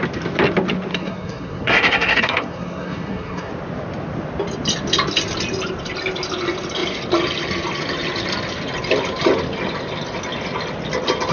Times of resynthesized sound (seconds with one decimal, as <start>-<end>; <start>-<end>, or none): 0.9-3.5